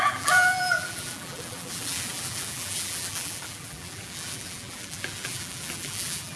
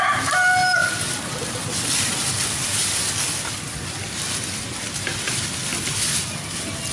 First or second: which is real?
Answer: second